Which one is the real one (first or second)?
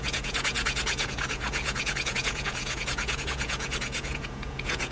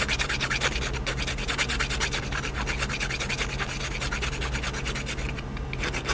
second